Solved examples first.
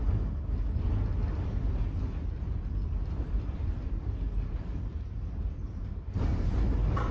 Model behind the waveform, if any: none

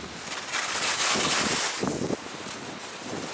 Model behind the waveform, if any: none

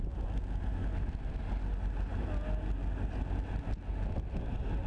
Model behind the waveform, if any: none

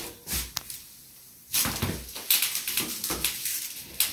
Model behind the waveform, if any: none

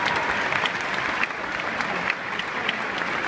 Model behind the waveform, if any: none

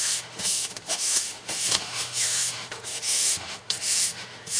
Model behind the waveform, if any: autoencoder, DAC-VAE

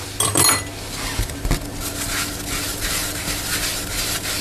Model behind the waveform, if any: none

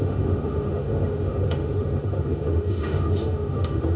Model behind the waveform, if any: autoencoder, DAC-VAE